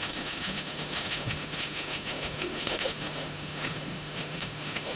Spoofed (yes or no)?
yes